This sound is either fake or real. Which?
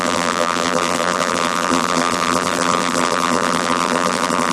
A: fake